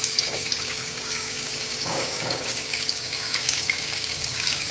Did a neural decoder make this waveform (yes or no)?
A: yes